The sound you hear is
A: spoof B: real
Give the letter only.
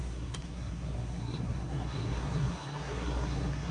A